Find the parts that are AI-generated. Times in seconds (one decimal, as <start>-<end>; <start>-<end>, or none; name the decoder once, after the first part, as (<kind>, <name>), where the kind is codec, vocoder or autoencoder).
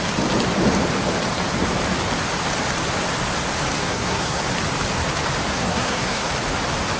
3.8-4.4 (codec, SNAC); 5.5-6.3